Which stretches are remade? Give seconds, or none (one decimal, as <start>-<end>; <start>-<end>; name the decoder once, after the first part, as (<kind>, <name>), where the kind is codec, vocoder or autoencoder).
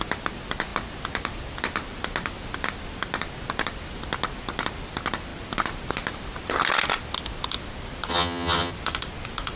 8.1-8.7 (vocoder, HiFi-GAN)